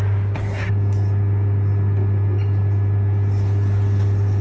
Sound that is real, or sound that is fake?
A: real